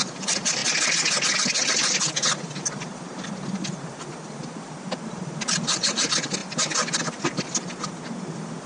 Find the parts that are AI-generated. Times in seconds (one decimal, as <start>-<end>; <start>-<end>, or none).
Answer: none